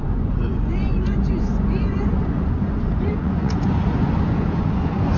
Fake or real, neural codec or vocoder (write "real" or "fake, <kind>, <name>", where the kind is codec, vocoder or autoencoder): fake, vocoder, Vocos